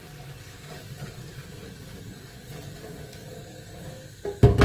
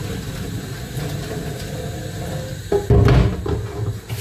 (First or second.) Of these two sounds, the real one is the second